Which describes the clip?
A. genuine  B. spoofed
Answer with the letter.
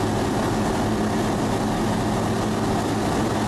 A